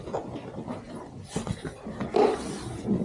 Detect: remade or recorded recorded